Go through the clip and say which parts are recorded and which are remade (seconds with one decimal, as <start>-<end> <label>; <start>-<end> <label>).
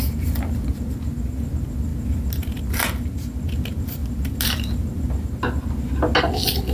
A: 0.0-1.9 recorded; 1.9-2.6 remade; 2.6-6.7 recorded